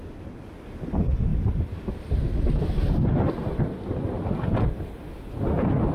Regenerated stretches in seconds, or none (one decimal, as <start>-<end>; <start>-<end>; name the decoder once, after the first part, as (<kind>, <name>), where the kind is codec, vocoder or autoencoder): none

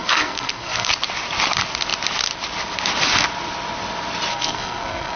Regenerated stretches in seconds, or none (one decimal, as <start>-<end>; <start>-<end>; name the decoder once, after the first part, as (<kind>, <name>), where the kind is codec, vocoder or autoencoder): 0.0-0.9 (codec, SNAC); 4.3-5.2